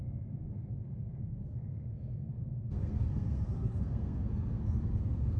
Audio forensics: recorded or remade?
remade